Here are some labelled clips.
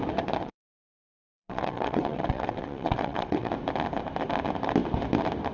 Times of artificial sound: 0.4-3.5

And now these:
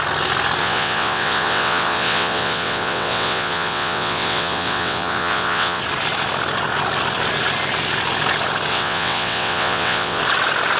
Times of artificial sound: 0.6-5.8; 8.7-10.2

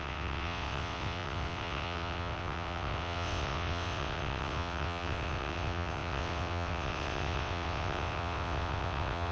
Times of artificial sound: 0.0-9.3

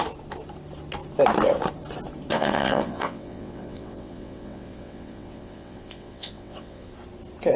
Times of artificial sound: 2.3-6.9